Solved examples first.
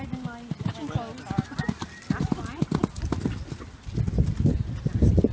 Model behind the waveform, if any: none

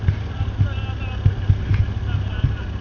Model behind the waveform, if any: none